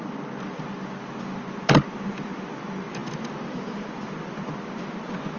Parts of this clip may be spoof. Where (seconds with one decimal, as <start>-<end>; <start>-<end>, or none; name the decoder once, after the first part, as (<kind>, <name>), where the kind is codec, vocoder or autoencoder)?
none